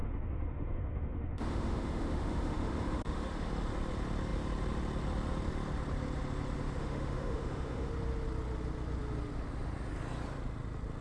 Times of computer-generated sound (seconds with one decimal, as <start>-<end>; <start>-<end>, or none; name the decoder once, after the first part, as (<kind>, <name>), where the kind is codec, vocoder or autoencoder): 0.0-3.5 (autoencoder, DAC-VAE); 6.8-7.9